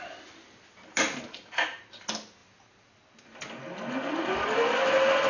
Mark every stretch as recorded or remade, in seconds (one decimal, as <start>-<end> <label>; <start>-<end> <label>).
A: 0.0-5.3 recorded